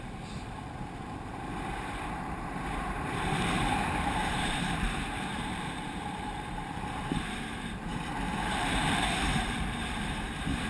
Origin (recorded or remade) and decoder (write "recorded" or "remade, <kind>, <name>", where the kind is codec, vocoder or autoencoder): remade, vocoder, BigVGAN v2